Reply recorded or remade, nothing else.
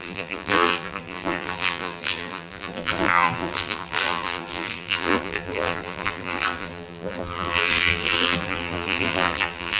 remade